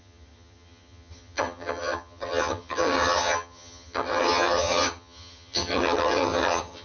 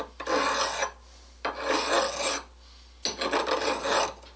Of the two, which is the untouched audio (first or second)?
second